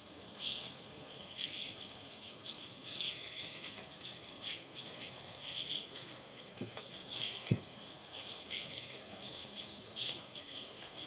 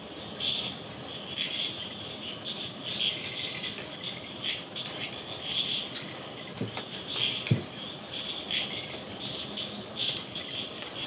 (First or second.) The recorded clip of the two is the second